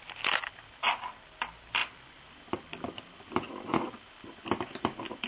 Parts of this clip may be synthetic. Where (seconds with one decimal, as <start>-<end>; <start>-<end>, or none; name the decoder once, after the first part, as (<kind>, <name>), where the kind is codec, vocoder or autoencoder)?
none